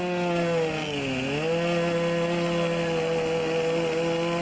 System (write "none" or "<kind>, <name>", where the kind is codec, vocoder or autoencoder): none